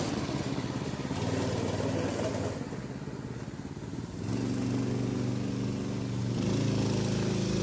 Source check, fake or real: real